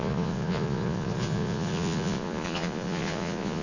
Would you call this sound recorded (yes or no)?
no